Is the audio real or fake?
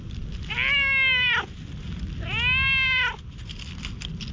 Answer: real